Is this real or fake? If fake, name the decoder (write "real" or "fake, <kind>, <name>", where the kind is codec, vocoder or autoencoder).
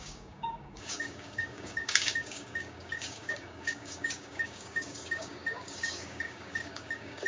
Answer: fake, codec, DAC